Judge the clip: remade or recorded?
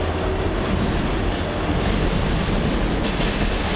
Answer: recorded